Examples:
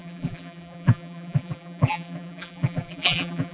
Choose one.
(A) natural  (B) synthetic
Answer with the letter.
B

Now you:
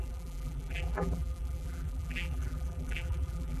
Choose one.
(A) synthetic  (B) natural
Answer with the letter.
A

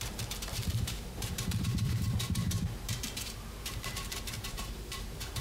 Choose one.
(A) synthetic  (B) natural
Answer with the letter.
A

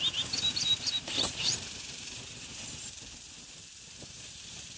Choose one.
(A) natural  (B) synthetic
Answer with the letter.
B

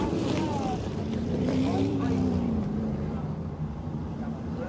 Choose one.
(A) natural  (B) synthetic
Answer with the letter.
B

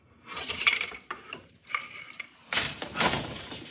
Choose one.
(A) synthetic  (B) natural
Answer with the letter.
A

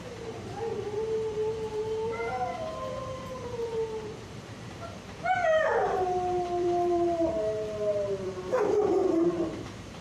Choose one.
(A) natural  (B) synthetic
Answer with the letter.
B